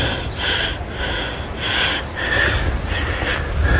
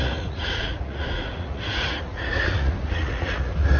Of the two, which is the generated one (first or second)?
second